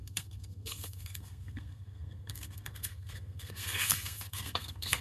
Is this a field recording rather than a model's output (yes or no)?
no